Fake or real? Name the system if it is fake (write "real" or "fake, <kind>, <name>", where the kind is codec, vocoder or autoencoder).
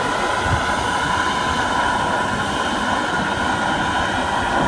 real